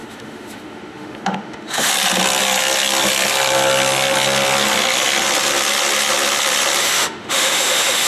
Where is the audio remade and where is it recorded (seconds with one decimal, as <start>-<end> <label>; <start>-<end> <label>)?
0.0-1.9 remade; 1.9-6.8 recorded; 6.8-8.1 remade